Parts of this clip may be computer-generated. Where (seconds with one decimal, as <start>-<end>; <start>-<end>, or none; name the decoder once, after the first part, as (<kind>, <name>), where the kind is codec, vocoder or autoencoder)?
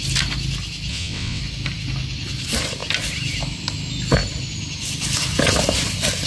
0.9-1.4 (vocoder, WaveNeXt)